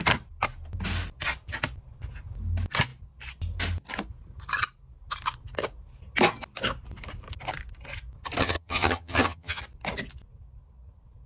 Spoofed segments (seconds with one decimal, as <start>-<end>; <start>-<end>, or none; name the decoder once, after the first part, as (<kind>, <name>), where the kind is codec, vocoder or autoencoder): 8.4-9.6 (vocoder, HiFi-GAN)